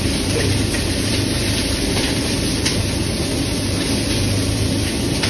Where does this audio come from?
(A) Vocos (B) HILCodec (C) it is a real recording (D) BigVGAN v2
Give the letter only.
D